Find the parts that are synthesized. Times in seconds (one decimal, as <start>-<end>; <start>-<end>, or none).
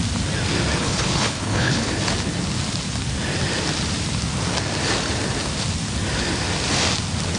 0.8-1.9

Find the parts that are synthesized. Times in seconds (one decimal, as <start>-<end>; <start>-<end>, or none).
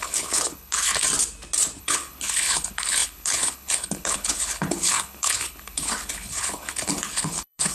0.0-0.9; 1.8-7.7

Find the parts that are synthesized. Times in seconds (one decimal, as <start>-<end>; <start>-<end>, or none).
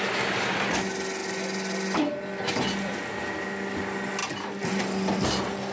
none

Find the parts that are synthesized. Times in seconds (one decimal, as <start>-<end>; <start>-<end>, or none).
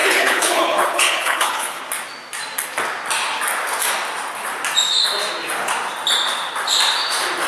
0.0-1.8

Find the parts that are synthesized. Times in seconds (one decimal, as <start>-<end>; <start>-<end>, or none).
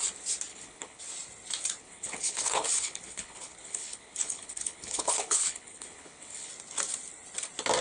0.5-1.0; 1.8-6.5